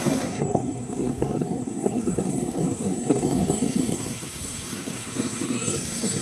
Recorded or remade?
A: remade